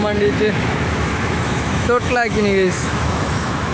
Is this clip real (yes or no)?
no